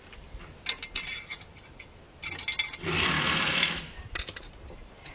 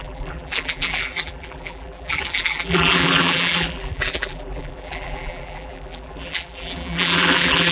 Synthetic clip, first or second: second